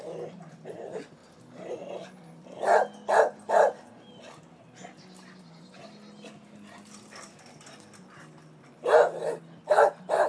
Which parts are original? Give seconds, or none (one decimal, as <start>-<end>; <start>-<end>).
0.0-10.3